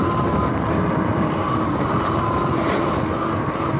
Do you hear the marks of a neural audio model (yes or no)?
no